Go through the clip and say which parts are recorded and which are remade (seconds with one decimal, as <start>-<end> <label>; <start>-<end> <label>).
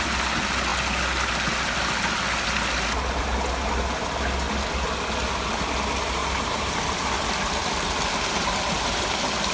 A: 0.0-6.2 recorded; 6.2-6.7 remade; 6.7-9.5 recorded